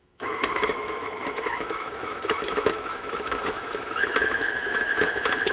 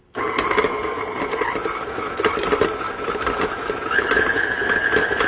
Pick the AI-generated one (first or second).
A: first